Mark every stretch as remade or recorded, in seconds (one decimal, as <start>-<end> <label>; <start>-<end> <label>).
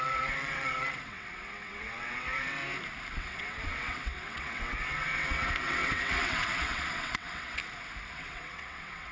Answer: 0.0-2.6 remade; 2.6-3.1 recorded; 3.1-7.6 remade; 7.6-8.1 recorded; 8.1-9.1 remade